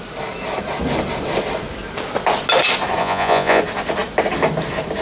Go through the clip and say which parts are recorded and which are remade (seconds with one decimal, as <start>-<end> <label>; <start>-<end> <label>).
0.0-3.0 recorded; 3.0-3.6 remade; 3.6-5.0 recorded